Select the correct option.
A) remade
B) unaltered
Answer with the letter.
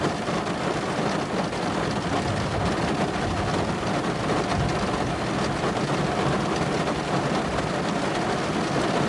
B